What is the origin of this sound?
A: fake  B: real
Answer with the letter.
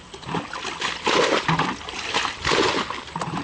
B